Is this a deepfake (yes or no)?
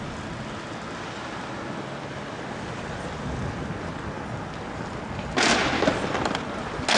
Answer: no